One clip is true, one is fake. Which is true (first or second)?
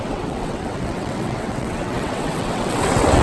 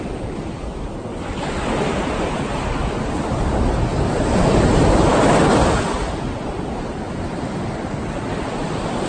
second